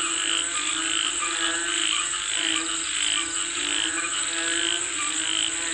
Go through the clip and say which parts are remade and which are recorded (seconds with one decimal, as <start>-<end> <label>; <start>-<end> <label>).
0.0-5.7 recorded